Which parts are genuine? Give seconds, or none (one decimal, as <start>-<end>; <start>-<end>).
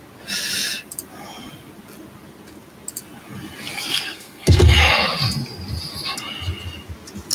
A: 0.0-3.9; 4.6-7.3